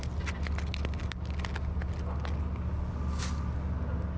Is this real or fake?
real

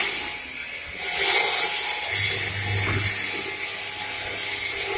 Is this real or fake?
real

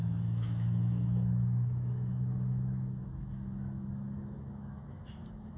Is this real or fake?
fake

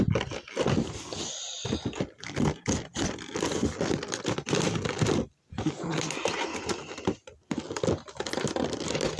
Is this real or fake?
real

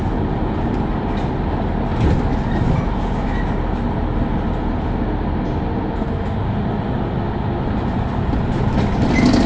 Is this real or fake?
real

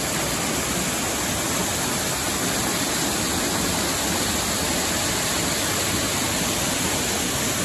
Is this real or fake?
real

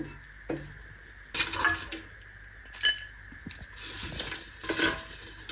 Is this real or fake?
real